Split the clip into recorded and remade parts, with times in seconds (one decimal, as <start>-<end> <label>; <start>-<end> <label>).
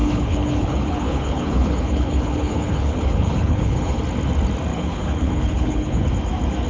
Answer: 0.0-4.0 remade; 4.0-4.7 recorded; 4.7-6.1 remade; 6.1-6.7 recorded